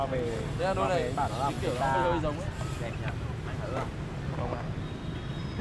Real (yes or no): yes